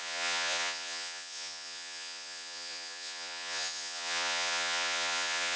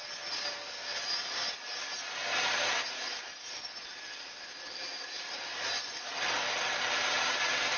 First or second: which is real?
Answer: second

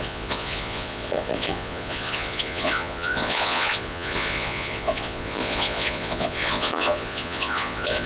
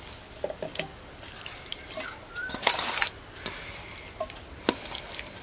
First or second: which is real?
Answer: second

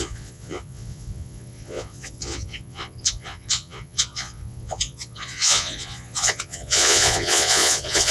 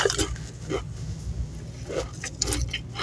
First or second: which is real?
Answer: second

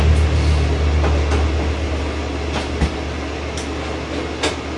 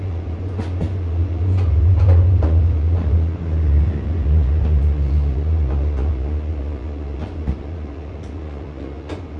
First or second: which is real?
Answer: first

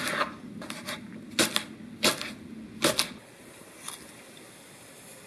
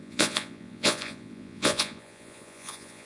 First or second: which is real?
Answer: first